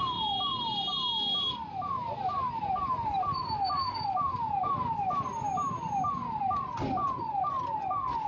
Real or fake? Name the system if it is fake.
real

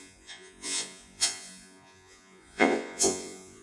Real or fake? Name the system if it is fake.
fake, vocoder, Vocos